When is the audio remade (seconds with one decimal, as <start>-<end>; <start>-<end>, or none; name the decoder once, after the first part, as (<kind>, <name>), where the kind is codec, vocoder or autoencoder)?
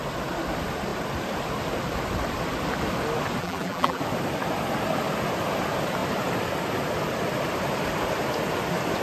3.4-4.0 (vocoder, BigVGAN v2)